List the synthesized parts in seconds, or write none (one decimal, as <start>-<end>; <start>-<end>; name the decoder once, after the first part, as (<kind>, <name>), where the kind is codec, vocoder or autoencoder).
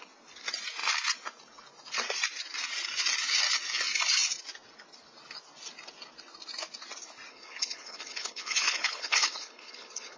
7.3-10.2 (codec, HILCodec)